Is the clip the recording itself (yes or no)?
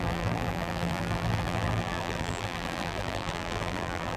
no